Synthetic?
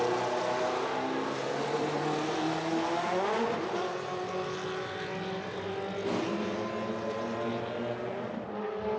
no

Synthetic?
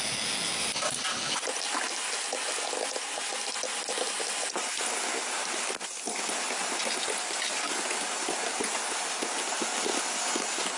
no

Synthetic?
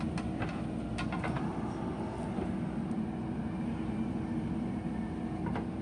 no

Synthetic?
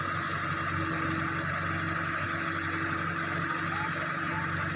no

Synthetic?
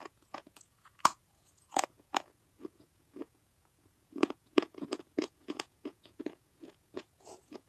yes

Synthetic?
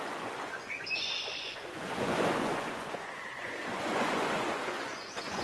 yes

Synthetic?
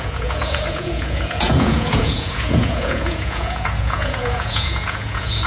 yes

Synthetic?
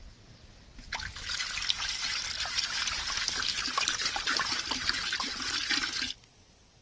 no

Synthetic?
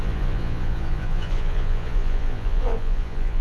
yes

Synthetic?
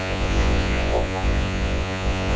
yes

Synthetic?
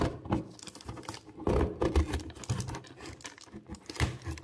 no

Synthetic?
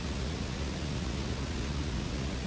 yes